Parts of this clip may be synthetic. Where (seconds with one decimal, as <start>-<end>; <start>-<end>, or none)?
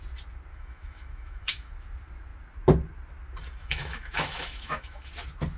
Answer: 0.5-1.7; 3.6-5.1